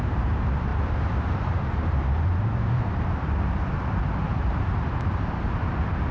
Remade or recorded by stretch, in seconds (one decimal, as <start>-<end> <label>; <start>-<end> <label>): 0.0-6.1 remade